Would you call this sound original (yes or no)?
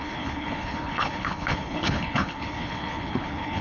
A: no